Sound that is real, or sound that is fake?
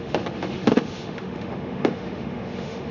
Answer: fake